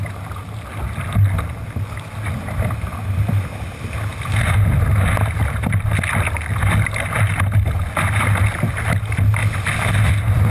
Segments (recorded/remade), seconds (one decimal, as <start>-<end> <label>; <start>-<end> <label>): 0.0-10.5 recorded